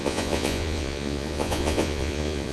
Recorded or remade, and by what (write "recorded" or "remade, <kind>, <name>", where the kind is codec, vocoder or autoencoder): remade, vocoder, Vocos